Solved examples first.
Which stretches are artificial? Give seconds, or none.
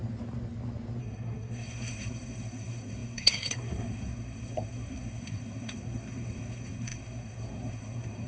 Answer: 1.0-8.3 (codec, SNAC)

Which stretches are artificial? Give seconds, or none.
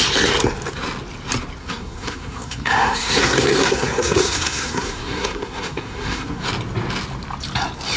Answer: 1.6-6.4 (codec, SNAC)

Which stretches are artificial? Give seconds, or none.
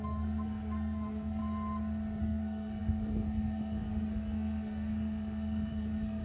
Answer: 0.0-1.4 (codec, SNAC); 2.2-6.2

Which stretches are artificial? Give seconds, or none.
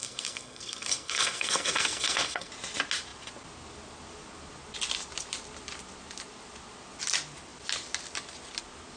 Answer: 0.0-2.5 (codec, SNAC)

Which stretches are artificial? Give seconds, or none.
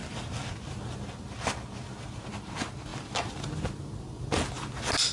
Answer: none